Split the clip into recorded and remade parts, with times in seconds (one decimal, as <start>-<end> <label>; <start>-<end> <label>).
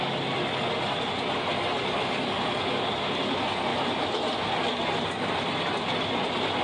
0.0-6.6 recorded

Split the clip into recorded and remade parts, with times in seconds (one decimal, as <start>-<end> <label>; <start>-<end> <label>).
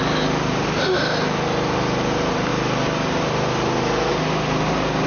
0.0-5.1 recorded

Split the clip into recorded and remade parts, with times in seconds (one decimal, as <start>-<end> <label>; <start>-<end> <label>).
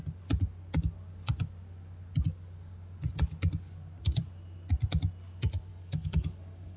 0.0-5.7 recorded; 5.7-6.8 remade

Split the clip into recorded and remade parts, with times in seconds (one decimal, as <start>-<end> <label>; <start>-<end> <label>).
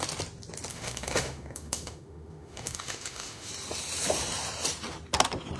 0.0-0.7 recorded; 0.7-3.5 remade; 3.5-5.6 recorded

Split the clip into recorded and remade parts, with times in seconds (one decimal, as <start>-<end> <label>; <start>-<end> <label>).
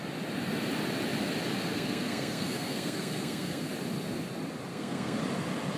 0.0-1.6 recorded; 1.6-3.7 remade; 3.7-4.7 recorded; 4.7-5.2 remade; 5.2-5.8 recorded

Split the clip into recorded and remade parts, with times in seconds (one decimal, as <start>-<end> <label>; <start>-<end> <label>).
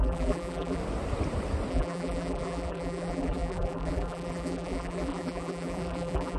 0.0-0.8 remade; 0.8-1.7 recorded; 1.7-6.4 remade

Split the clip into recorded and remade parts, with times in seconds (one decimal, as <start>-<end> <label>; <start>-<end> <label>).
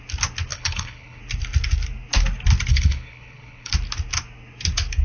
0.0-0.5 recorded; 0.5-1.2 remade; 1.2-2.7 recorded; 2.7-3.7 remade; 3.7-5.0 recorded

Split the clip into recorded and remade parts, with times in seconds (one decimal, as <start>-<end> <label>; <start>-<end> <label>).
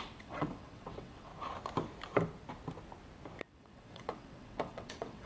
0.0-1.3 remade; 1.3-3.4 recorded; 3.4-5.3 remade